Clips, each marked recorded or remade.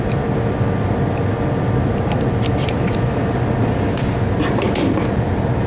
recorded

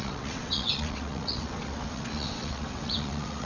remade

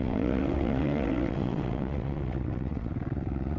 remade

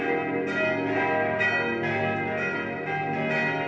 recorded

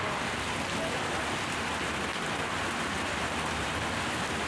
recorded